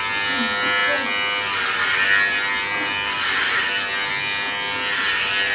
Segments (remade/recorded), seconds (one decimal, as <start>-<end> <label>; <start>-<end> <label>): 0.0-5.5 recorded